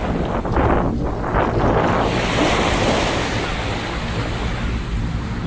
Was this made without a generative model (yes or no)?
yes